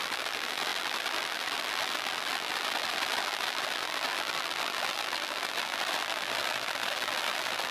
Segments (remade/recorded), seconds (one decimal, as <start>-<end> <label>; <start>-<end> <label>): 0.0-7.7 remade